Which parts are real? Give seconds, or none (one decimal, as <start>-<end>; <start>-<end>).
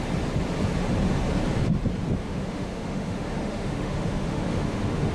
0.0-2.2